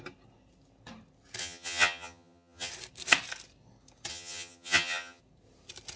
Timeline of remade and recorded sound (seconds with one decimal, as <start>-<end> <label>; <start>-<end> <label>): 0.0-1.4 recorded; 1.4-2.7 remade; 2.7-4.1 recorded; 4.1-5.2 remade; 5.2-6.0 recorded